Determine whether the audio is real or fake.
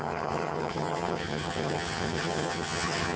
fake